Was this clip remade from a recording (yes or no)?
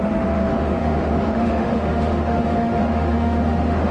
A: yes